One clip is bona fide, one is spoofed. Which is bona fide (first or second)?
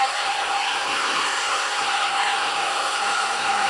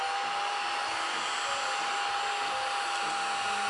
second